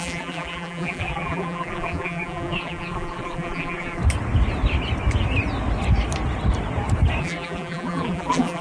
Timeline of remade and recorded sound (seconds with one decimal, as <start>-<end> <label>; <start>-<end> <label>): 0.0-4.0 remade; 4.0-7.2 recorded; 7.2-8.6 remade